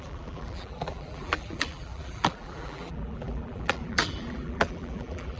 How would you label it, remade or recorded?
remade